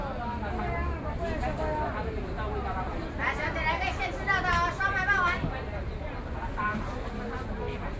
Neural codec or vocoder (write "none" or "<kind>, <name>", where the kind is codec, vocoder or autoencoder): none